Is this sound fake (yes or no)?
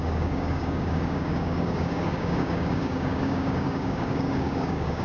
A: yes